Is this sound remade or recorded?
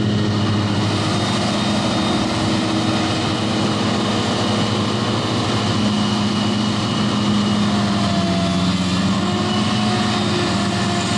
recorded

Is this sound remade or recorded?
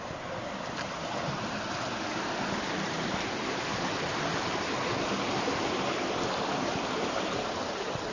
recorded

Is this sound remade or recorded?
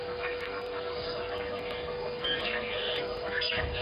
remade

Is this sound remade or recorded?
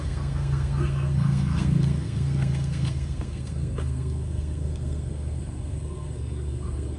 remade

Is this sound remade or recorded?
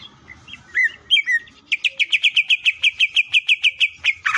recorded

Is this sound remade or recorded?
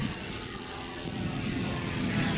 recorded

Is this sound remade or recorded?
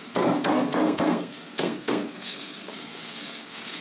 remade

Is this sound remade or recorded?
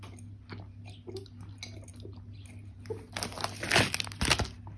recorded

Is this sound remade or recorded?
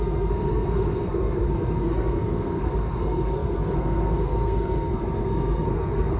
remade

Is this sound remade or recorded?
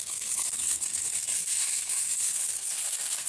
remade